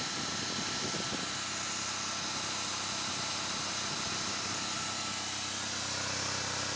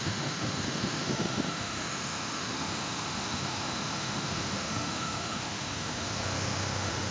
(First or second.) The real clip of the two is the first